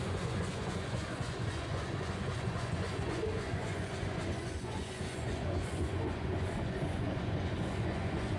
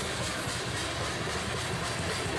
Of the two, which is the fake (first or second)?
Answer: first